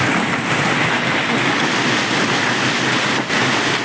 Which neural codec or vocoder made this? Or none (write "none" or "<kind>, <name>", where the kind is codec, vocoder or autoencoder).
none